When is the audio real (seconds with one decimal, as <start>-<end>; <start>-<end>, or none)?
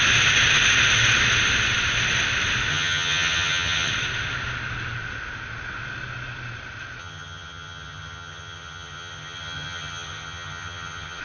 0.0-2.7; 3.9-7.0